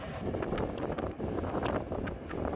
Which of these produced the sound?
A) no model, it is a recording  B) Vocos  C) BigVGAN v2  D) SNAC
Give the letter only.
A